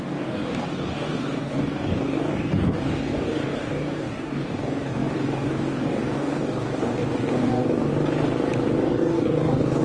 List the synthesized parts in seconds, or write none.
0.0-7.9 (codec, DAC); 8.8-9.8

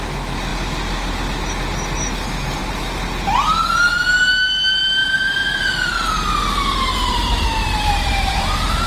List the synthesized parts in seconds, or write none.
5.0-5.9 (vocoder, BigVGAN v2); 6.9-8.5